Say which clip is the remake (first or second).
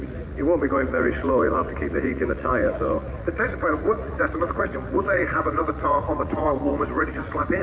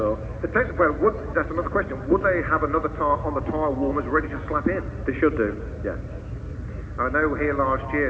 first